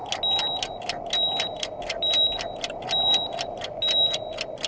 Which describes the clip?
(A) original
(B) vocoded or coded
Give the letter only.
A